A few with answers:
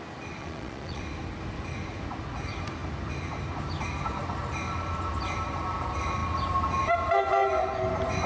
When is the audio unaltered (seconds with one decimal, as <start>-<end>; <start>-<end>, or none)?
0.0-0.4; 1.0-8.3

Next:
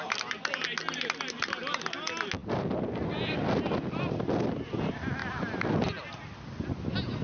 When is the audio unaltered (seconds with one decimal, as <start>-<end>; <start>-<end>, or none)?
0.0-7.2

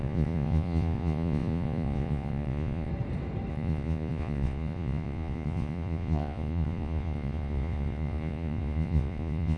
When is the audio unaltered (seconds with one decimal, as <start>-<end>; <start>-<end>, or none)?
2.9-3.5